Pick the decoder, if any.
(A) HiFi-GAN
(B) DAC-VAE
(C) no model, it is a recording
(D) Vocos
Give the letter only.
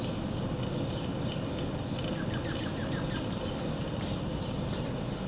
C